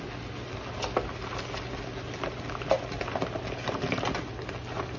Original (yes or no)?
yes